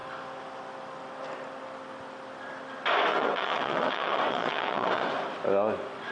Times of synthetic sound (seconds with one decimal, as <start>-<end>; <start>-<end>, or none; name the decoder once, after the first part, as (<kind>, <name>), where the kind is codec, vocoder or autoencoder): 3.1-5.1 (vocoder, WaveNeXt)